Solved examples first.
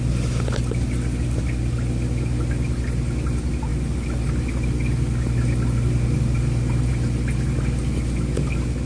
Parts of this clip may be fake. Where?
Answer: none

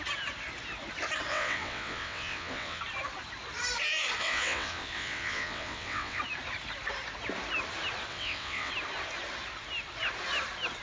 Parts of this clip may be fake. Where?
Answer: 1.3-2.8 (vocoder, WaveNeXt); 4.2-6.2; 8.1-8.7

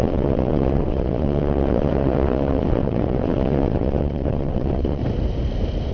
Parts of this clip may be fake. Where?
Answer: 0.0-5.0 (vocoder, WaveNeXt)